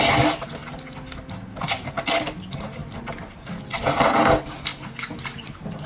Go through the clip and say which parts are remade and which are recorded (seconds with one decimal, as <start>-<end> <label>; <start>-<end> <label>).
0.0-5.9 recorded